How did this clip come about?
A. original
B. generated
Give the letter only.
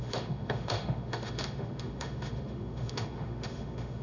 B